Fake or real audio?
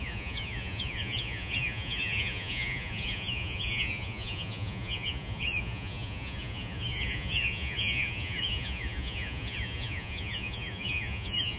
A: fake